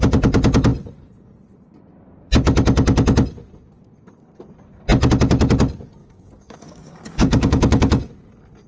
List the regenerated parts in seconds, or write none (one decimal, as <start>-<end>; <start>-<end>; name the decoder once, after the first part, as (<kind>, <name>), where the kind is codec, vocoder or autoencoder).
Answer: 6.0-8.1 (codec, DAC)